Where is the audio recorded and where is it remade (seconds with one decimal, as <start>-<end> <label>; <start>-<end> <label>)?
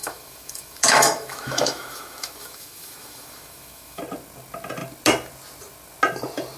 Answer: 0.0-4.0 remade; 4.0-6.6 recorded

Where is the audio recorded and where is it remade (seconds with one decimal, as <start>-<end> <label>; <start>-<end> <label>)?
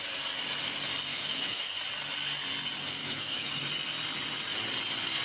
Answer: 0.0-1.1 recorded; 1.1-1.7 remade; 1.7-3.0 recorded; 3.0-3.6 remade; 3.6-5.2 recorded